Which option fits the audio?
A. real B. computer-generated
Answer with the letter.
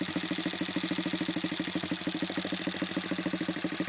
A